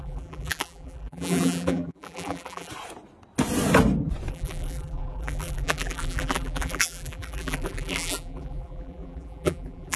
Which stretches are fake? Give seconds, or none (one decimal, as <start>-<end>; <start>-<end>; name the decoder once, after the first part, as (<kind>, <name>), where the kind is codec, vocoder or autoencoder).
0.0-2.7 (vocoder, BigVGAN v2); 4.3-10.0